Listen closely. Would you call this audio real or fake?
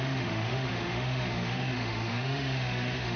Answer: fake